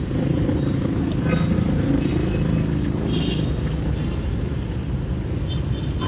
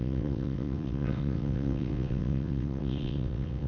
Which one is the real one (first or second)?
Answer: first